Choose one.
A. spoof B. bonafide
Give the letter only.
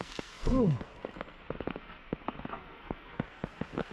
A